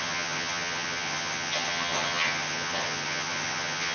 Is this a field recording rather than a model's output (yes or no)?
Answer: no